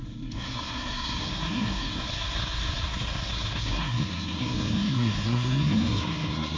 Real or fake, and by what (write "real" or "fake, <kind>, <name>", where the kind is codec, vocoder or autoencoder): fake, codec, SNAC